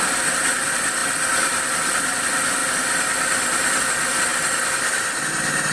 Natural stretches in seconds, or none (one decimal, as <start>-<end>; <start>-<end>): 0.0-5.7